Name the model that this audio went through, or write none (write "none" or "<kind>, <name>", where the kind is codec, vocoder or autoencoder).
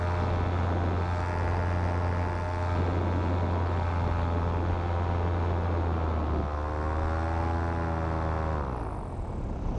none